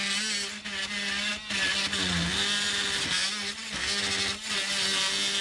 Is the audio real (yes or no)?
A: yes